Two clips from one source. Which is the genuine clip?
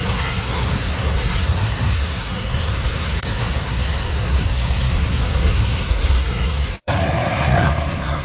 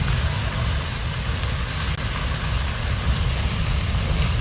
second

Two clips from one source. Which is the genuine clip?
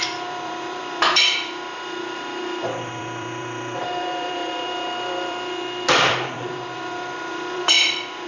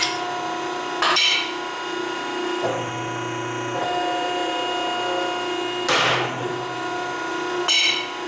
second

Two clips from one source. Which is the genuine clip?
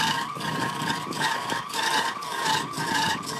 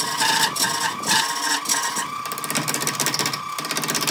second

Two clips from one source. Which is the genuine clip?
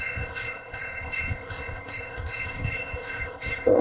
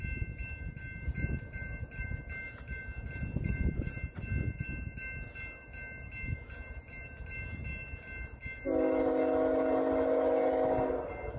second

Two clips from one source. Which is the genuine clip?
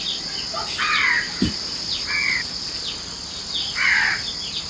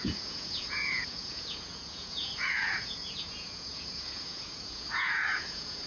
first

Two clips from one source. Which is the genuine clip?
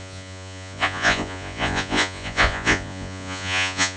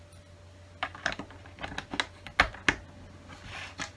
second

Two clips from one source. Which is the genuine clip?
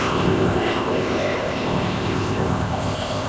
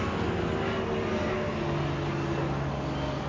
second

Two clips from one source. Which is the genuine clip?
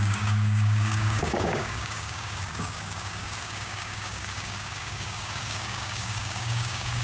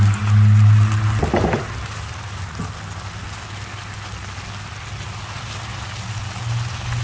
second